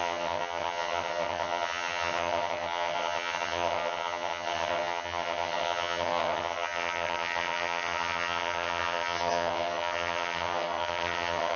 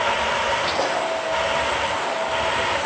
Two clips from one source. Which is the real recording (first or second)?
second